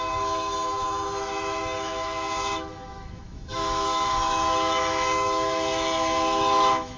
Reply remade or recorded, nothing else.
remade